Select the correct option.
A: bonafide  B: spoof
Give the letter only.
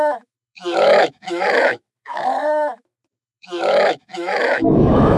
B